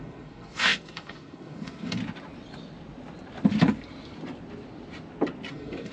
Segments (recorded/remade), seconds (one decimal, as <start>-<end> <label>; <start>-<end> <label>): 0.0-2.0 remade; 2.0-5.5 recorded; 5.5-5.9 remade